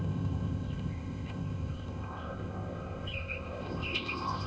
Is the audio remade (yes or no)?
yes